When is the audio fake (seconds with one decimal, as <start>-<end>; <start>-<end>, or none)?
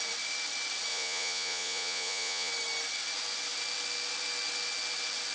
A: 0.9-2.5